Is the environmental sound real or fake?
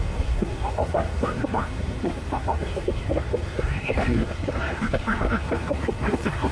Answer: fake